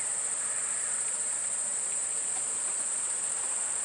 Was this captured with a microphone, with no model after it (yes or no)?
no